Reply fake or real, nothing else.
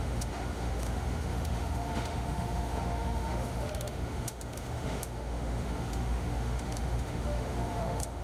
fake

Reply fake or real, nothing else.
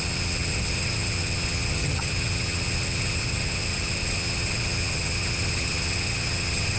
fake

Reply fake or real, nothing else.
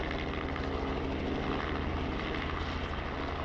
real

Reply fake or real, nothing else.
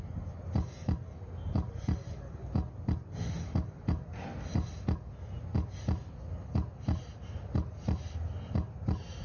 real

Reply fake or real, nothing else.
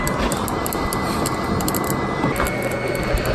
real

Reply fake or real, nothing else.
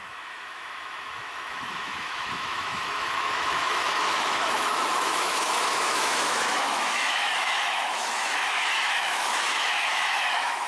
fake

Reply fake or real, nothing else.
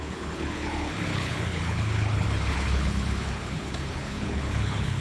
fake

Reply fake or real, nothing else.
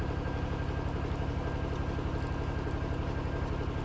real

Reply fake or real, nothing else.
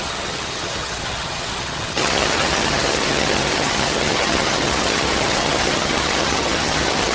fake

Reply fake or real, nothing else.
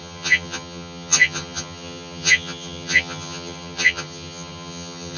fake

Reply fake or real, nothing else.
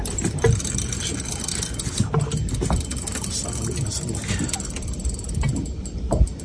real